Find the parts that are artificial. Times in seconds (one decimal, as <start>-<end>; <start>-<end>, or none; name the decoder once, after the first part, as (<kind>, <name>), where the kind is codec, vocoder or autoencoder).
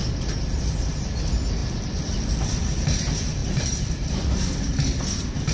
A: 3.4-4.1 (vocoder, BigVGAN v2)